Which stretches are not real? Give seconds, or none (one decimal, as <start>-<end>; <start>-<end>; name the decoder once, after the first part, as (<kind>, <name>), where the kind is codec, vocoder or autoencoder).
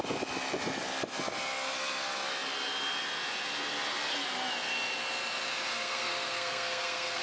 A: 5.7-7.2 (codec, SNAC)